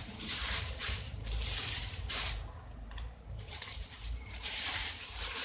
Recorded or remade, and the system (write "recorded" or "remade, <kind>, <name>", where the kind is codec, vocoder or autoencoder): remade, vocoder, BigVGAN v2